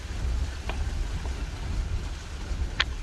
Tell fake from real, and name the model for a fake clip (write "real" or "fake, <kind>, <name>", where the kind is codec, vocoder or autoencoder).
real